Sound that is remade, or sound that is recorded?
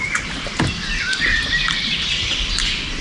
recorded